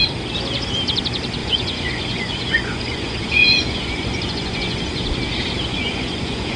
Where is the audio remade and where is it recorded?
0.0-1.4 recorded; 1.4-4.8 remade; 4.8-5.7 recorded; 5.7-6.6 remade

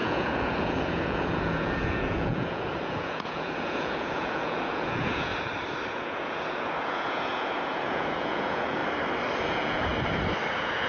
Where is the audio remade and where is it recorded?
0.0-5.3 remade; 5.3-5.9 recorded; 5.9-8.8 remade; 8.8-9.4 recorded; 9.4-9.9 remade; 9.9-10.5 recorded; 10.5-10.9 remade

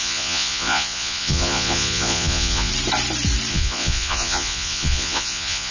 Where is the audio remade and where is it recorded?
0.0-2.7 remade; 2.7-3.5 recorded; 3.5-5.7 remade

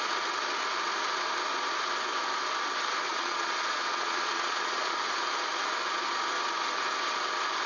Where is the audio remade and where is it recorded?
0.0-3.1 recorded; 3.1-5.0 remade; 5.0-7.7 recorded